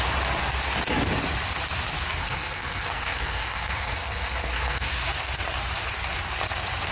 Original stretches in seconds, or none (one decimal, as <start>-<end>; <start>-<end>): 0.0-2.2; 4.9-6.9